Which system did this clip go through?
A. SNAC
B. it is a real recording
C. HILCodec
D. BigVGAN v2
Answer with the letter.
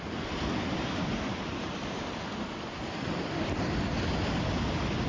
B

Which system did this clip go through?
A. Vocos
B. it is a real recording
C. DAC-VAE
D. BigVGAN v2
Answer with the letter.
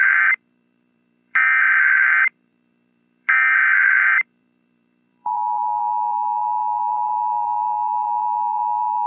D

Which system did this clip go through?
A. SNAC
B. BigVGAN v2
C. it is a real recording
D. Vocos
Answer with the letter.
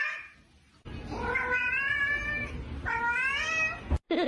C